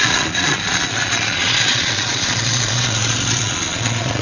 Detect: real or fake fake